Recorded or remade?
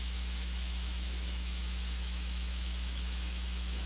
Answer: remade